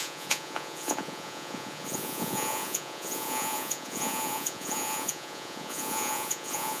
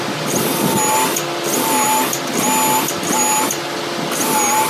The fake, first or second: first